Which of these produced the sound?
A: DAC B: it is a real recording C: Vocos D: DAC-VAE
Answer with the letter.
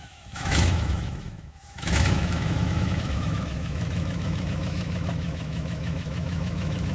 D